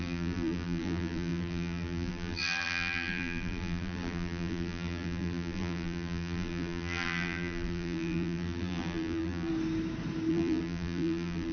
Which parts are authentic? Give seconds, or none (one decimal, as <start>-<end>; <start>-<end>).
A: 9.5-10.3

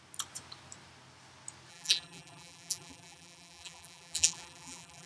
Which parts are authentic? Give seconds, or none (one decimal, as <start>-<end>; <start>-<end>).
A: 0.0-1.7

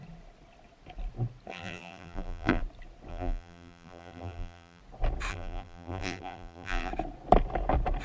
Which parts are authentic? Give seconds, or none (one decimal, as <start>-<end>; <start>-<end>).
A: 0.0-1.5; 2.6-3.1; 4.8-5.3; 6.9-8.0

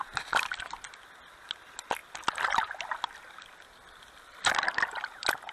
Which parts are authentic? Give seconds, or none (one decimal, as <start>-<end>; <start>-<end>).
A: 0.0-5.5